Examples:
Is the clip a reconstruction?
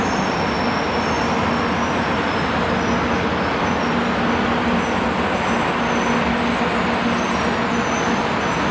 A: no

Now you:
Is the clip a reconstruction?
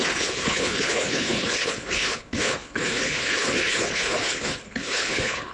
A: yes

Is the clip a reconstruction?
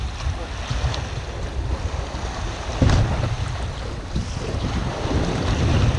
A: no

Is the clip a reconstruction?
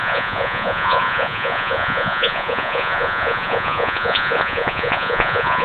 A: yes